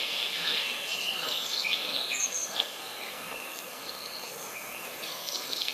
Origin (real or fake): fake